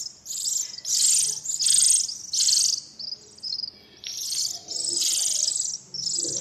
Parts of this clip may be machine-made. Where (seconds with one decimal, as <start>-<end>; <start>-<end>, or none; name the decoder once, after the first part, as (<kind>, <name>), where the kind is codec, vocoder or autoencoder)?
none